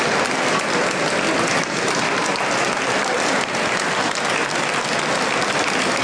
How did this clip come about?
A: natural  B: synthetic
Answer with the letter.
A